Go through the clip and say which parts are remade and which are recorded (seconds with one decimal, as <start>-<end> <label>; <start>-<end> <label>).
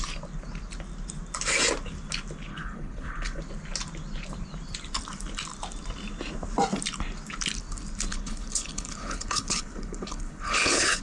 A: 0.0-2.5 recorded; 2.5-3.4 remade; 3.4-8.1 recorded; 8.1-11.0 remade